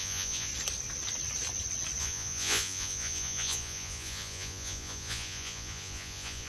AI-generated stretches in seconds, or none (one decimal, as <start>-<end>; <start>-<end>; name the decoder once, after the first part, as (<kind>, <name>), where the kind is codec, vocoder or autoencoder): 0.0-0.5 (vocoder, Vocos); 2.0-6.5